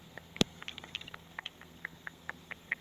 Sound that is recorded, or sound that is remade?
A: remade